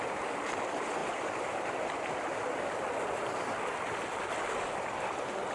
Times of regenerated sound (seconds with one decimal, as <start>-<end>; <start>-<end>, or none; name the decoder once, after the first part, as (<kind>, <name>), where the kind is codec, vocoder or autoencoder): none